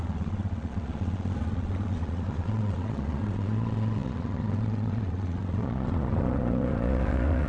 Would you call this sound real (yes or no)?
no